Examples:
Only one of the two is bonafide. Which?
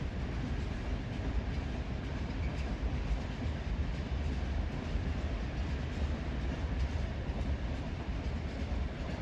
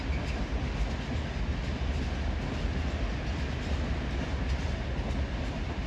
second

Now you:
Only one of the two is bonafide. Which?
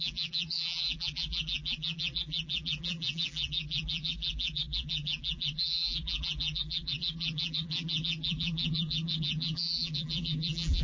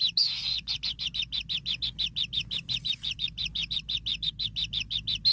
second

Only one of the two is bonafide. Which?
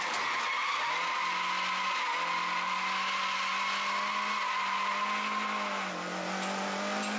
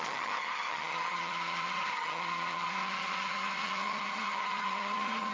first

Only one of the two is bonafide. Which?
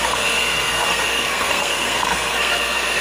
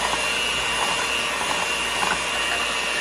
second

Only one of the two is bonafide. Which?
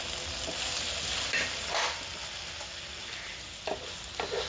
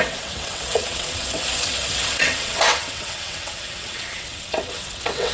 first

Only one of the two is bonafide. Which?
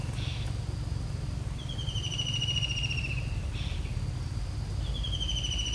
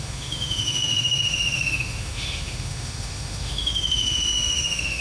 first